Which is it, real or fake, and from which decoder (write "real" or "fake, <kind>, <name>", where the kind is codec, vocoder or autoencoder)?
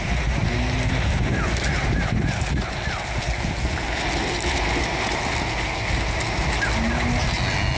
real